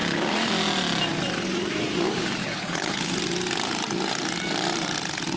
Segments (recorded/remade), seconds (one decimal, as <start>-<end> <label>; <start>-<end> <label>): 0.0-2.4 recorded; 2.4-3.1 remade; 3.1-5.4 recorded

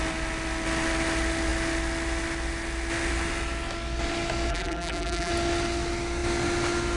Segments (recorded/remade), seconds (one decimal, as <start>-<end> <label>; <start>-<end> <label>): 0.0-4.5 recorded; 4.5-5.3 remade; 5.3-7.0 recorded

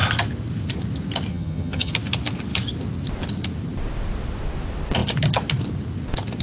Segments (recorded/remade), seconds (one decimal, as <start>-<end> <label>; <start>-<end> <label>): 0.0-1.3 recorded; 1.3-1.9 remade; 1.9-6.4 recorded

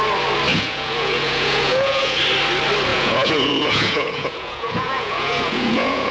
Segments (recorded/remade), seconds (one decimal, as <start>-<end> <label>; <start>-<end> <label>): 0.0-0.5 recorded; 0.5-2.2 remade; 2.2-2.9 recorded; 2.9-6.1 remade